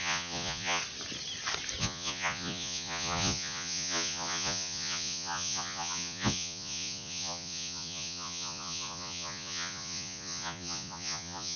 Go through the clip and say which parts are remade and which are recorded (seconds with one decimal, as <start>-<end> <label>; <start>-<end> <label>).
0.0-0.8 remade; 0.8-1.8 recorded; 1.8-11.6 remade